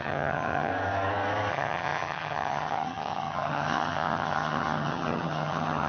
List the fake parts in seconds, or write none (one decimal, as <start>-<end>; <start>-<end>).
0.0-0.7; 1.5-5.9